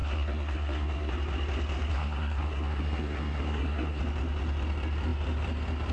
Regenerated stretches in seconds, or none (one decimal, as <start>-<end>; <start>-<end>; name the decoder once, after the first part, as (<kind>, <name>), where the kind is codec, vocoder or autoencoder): 0.0-1.1 (codec, SNAC); 1.9-4.0